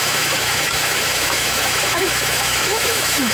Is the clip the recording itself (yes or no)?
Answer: no